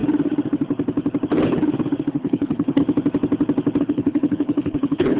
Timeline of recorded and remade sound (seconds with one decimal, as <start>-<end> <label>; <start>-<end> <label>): 0.0-2.1 recorded; 2.1-2.8 remade; 2.8-3.8 recorded; 3.8-5.2 remade